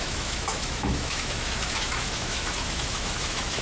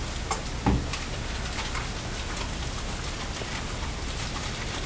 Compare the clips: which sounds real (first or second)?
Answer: second